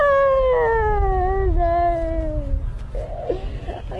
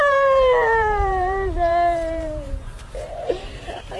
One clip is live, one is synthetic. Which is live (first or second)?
first